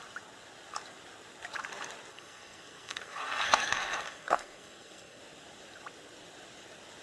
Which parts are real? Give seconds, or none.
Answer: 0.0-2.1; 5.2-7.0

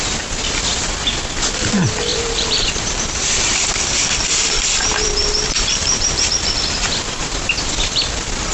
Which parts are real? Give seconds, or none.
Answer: 0.0-2.1; 6.3-8.5

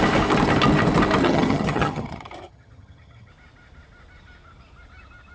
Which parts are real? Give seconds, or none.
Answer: 0.0-1.2; 3.3-5.3

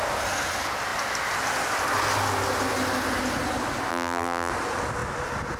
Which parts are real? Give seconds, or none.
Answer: 0.0-3.9; 4.5-5.6

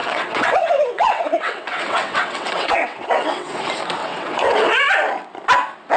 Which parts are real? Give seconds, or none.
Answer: 3.6-4.0; 4.9-6.0